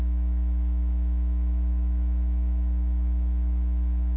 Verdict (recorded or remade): remade